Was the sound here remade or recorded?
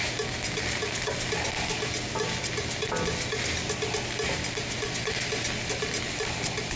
recorded